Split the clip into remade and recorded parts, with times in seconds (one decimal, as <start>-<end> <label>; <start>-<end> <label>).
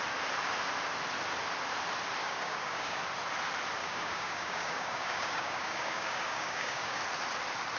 0.0-2.2 recorded; 2.2-3.0 remade; 3.0-3.8 recorded; 3.8-7.0 remade; 7.0-7.8 recorded